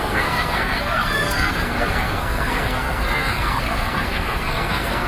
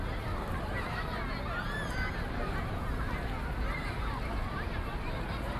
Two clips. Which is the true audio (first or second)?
second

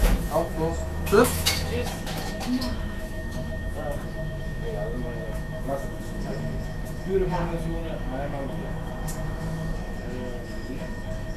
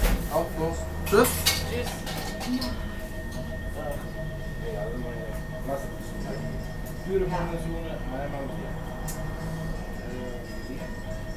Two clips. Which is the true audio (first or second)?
second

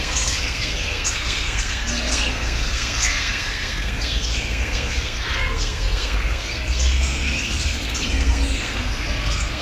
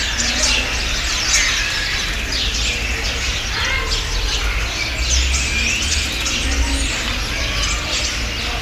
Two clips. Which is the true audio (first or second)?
second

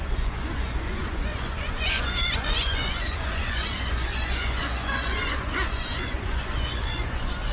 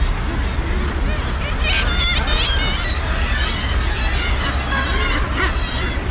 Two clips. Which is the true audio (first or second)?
second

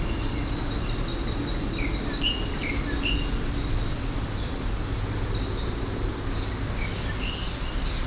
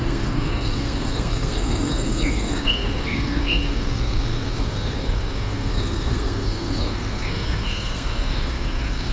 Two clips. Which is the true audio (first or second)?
first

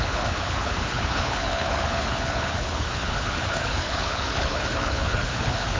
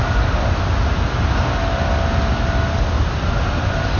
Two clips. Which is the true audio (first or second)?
second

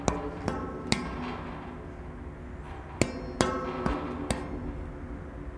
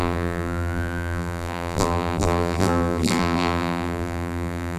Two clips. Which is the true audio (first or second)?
first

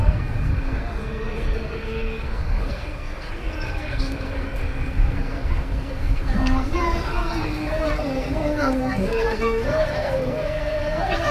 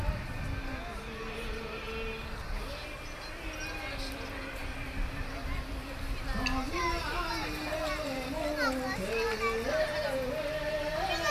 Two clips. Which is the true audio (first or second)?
second